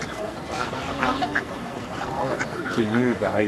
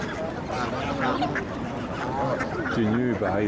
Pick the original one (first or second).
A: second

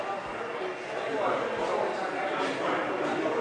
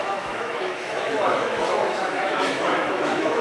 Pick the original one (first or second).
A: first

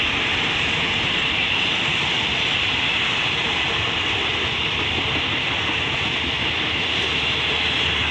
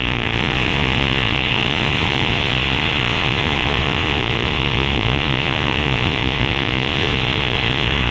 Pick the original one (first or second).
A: first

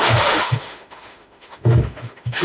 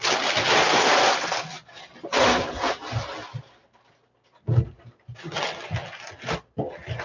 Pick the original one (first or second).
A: second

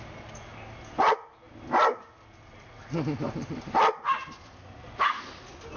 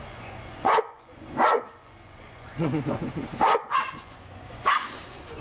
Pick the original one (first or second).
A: first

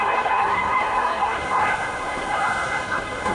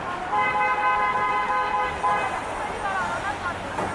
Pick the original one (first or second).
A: second